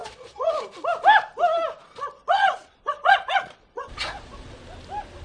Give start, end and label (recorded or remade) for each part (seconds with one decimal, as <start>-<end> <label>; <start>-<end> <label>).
0.0-0.5 remade; 0.5-1.8 recorded; 1.8-4.6 remade; 4.6-5.2 recorded

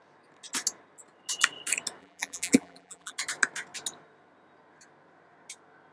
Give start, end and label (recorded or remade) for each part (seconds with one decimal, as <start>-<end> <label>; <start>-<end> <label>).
0.0-2.0 recorded; 2.0-3.1 remade; 3.1-5.9 recorded

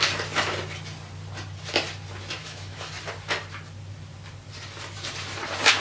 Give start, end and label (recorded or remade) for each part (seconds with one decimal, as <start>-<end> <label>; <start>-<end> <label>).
0.0-2.4 recorded; 2.4-2.9 remade; 2.9-5.8 recorded

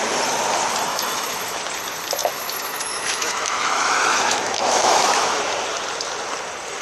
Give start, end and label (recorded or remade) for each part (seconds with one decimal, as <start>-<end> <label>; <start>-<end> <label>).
0.0-0.9 recorded; 0.9-1.6 remade; 1.6-2.2 recorded; 2.2-5.4 remade; 5.4-6.8 recorded

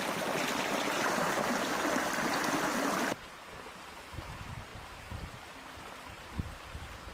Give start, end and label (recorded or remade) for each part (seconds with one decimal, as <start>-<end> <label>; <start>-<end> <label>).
0.0-7.1 recorded